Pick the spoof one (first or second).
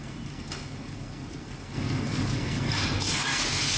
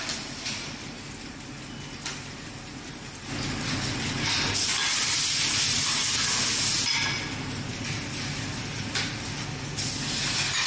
first